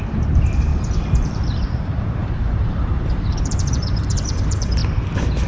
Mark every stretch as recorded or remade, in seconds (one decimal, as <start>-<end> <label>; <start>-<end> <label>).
0.0-4.8 remade; 4.8-5.5 recorded